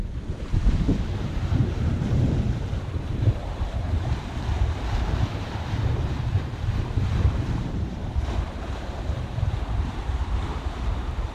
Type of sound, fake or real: fake